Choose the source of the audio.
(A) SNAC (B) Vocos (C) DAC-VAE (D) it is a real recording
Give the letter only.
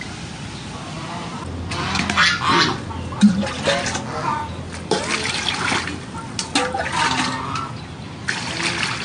D